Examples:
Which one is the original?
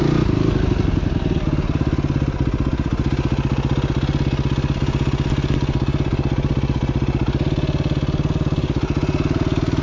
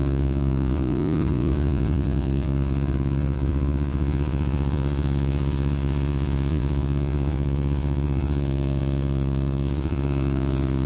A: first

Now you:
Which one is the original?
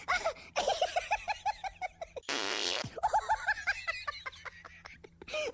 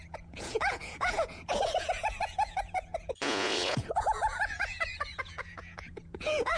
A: first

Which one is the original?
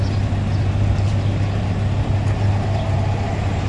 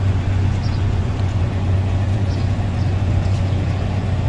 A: first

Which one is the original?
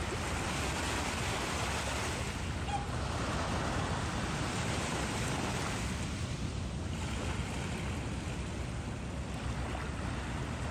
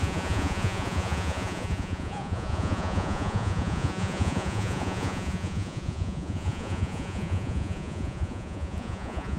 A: first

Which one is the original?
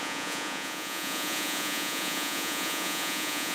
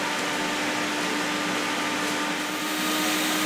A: second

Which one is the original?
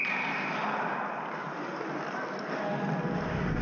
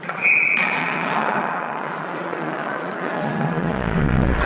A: first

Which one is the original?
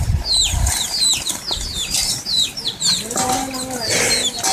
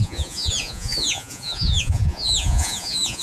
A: first